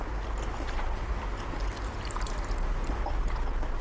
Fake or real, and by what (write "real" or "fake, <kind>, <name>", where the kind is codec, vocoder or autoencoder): real